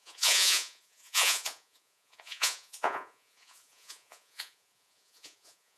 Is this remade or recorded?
remade